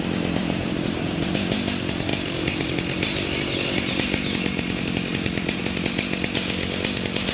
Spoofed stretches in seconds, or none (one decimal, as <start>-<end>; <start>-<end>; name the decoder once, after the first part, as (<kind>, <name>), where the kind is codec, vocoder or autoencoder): 0.4-1.3 (vocoder, BigVGAN v2); 2.1-5.6